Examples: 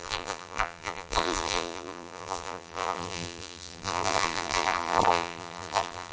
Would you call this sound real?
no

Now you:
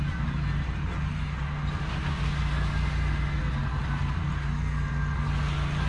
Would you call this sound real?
yes